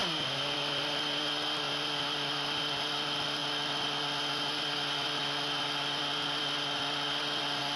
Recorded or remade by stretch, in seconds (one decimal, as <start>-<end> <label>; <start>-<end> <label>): 0.0-7.8 recorded

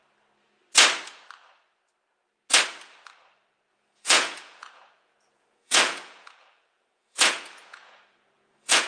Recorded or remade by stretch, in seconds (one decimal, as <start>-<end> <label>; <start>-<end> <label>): 0.0-3.7 recorded; 3.7-8.9 remade

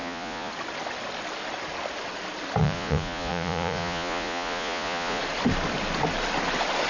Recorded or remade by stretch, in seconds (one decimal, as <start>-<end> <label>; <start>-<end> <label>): 0.0-0.5 remade; 0.5-2.6 recorded; 2.6-5.2 remade; 5.2-6.9 recorded